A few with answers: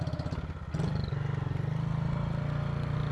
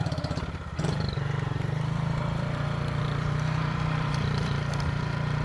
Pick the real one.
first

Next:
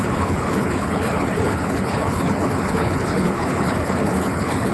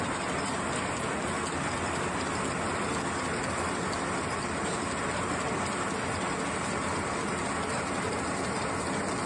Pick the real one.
second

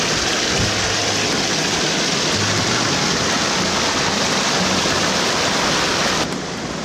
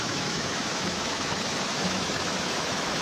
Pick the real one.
first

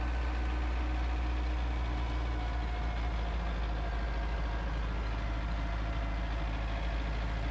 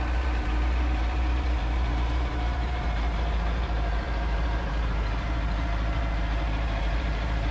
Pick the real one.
first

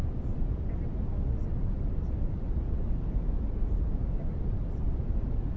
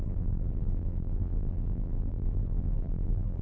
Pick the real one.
first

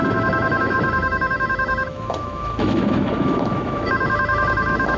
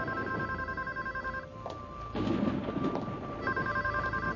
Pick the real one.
second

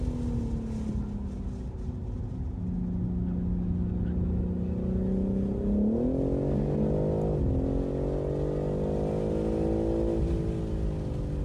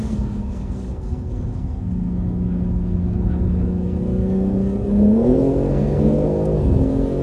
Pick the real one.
first